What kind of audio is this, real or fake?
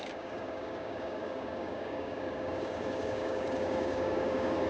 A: fake